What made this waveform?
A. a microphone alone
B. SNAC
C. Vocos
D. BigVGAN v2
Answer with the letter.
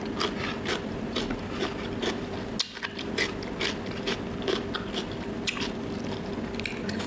A